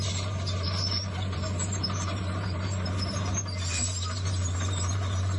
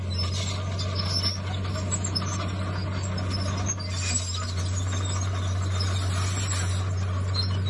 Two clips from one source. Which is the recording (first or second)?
second